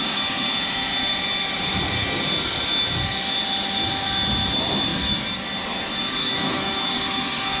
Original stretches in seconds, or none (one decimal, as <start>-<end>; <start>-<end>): 0.0-6.2; 6.9-7.6